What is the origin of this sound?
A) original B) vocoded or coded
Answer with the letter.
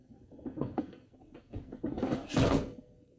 B